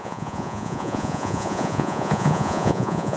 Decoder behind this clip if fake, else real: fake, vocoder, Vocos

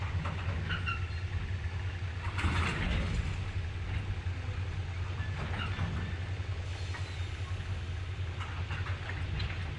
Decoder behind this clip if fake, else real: real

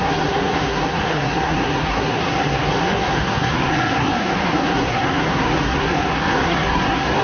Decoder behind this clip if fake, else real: fake, codec, SNAC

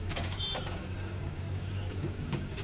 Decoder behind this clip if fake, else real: fake, codec, DAC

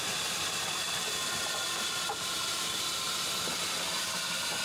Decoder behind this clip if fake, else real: real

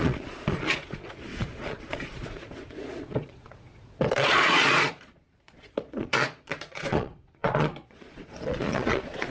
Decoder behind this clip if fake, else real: fake, vocoder, Vocos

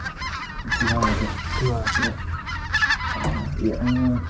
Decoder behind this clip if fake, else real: real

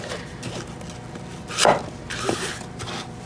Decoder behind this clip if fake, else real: real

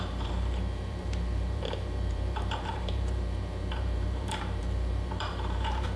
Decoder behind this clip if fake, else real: fake, vocoder, BigVGAN v2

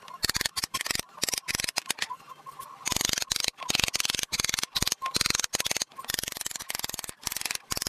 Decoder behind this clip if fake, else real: real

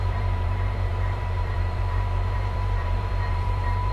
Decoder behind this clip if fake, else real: fake, vocoder, BigVGAN v2